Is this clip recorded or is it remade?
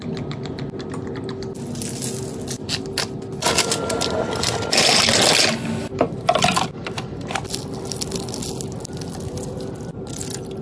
recorded